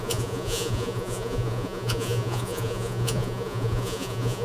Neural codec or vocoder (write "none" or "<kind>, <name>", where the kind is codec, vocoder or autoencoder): vocoder, Vocos